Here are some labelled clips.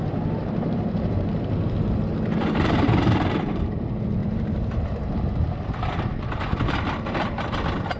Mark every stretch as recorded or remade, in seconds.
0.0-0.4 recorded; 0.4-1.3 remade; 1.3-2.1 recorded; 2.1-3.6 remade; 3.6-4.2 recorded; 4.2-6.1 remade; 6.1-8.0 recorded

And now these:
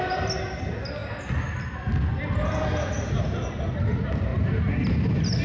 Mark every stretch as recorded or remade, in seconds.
0.0-5.4 recorded